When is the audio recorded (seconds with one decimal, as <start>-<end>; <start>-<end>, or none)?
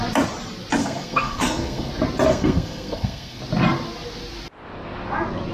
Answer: 0.0-0.8; 1.9-2.3; 3.4-5.5